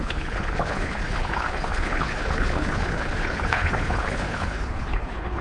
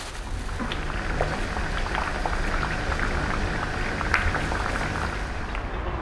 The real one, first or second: second